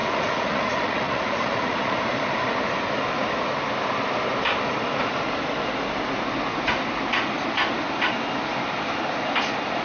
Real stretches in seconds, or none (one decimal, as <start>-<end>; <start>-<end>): 2.0-9.8

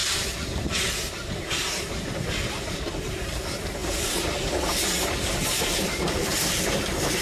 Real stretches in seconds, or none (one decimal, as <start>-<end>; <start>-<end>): 0.7-3.8; 6.4-7.2

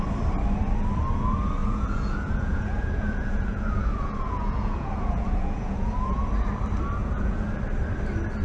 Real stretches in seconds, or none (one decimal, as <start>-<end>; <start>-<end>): 0.0-1.6; 6.2-7.0; 7.6-8.4